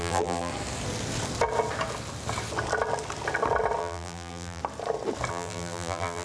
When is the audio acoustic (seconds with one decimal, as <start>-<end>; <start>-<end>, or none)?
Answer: 0.5-3.8; 4.6-5.3